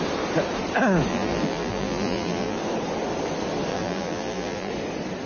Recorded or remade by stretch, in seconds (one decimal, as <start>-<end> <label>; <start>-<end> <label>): 0.0-1.1 recorded; 1.1-2.6 remade; 2.6-3.7 recorded; 3.7-4.7 remade; 4.7-5.3 recorded